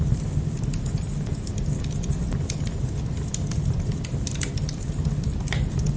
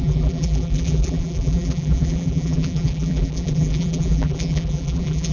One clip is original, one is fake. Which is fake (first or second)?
second